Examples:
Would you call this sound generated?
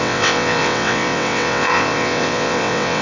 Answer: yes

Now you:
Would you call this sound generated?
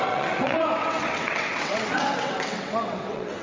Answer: yes